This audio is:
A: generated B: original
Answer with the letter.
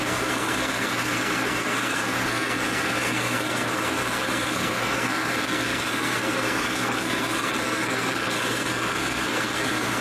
A